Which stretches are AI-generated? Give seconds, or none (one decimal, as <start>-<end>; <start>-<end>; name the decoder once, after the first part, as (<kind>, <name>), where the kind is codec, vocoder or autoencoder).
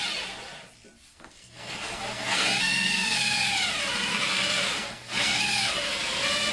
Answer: 1.1-3.5 (codec, SNAC); 4.1-6.5